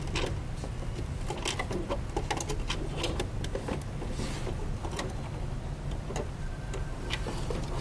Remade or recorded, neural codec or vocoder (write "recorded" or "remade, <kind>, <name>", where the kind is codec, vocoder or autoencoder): recorded